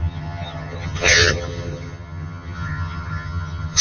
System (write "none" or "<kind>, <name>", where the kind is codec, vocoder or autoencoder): vocoder, HiFi-GAN